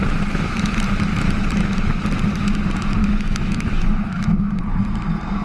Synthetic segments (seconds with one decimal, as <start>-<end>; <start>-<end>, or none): 3.0-4.6